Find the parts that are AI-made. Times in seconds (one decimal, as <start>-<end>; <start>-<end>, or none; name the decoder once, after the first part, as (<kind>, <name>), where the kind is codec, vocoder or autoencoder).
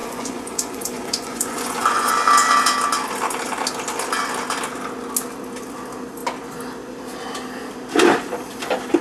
0.0-2.1 (vocoder, Vocos)